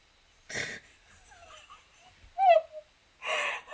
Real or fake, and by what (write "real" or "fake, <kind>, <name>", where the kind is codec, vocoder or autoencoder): real